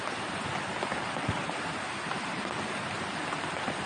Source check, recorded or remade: recorded